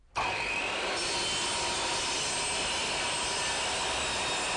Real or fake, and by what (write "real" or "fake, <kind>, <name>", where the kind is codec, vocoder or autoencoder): real